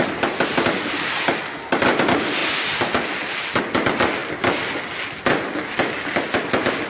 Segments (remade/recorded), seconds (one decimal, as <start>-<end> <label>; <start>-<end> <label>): 0.0-6.9 recorded